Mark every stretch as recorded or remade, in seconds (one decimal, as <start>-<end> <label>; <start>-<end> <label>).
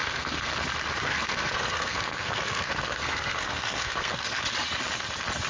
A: 0.0-0.5 remade; 0.5-1.1 recorded; 1.1-4.4 remade; 4.4-5.5 recorded